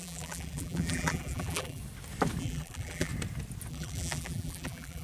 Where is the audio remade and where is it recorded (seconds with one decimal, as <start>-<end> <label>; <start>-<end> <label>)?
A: 0.0-1.8 remade; 1.8-2.4 recorded; 2.4-3.1 remade; 3.1-3.7 recorded; 3.7-5.0 remade